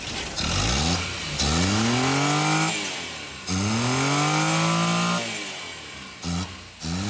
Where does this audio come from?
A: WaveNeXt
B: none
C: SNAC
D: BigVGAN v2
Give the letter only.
B